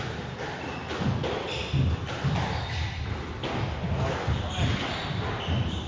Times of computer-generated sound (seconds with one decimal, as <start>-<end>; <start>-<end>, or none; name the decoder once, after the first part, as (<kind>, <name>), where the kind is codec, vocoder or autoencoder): none